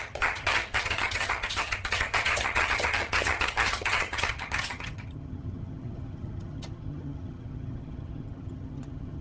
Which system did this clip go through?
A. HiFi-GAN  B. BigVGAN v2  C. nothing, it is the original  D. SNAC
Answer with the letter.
A